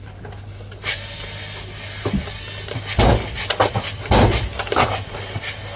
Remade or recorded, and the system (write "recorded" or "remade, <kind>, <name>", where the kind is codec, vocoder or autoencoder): recorded